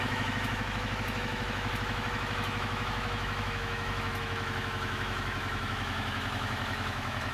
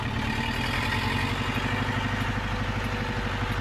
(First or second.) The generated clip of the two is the first